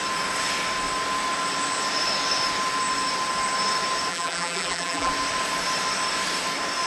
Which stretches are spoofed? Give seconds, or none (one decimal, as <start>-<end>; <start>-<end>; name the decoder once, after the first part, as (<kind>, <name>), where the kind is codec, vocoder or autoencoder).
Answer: 4.1-5.1 (vocoder, BigVGAN v2)